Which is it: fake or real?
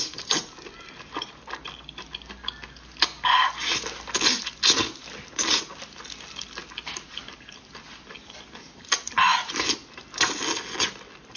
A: real